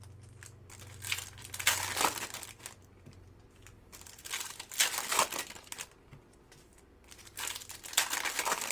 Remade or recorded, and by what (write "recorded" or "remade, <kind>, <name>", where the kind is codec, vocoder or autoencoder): recorded